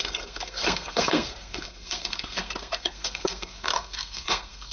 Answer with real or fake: fake